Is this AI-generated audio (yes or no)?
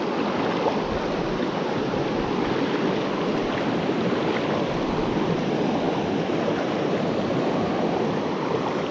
no